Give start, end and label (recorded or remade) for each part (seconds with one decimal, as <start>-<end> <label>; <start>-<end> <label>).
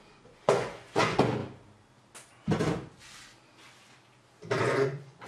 0.0-1.4 remade; 1.4-4.6 recorded; 4.6-5.3 remade